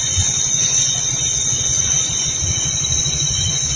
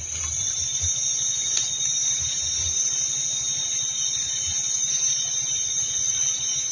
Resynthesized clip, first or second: first